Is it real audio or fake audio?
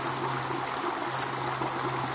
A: real